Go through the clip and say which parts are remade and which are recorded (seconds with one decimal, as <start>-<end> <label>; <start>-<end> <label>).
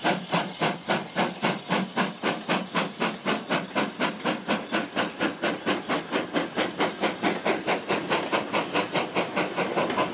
0.0-10.1 recorded